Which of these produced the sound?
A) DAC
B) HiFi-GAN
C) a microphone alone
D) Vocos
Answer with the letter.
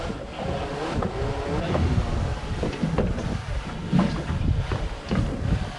C